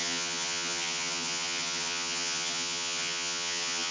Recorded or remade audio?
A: remade